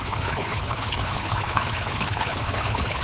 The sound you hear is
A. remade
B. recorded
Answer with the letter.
A